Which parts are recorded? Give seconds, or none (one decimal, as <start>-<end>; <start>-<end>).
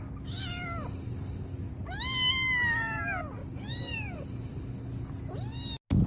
0.0-3.4; 4.5-6.1